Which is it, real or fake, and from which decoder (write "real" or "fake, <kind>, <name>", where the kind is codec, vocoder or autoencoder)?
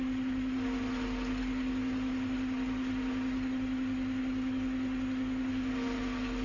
real